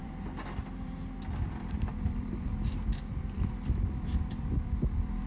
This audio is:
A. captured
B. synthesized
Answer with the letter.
B